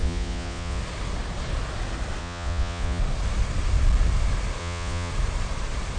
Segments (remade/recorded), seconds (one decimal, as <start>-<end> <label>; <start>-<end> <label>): 0.0-0.8 remade; 0.8-2.2 recorded; 2.2-3.0 remade; 3.0-4.6 recorded; 4.6-5.1 remade; 5.1-6.0 recorded